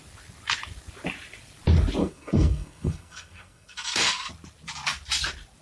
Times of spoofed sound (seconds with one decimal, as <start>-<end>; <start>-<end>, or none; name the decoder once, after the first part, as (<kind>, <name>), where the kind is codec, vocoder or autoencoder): 2.0-4.3 (codec, SNAC)